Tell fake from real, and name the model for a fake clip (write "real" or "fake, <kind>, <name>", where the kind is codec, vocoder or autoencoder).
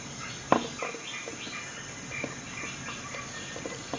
real